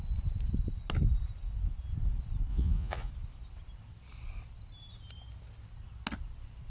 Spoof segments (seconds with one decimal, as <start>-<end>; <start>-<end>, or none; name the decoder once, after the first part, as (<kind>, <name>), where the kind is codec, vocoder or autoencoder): 2.5-3.1 (vocoder, Vocos)